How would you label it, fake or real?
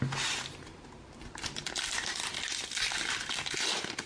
real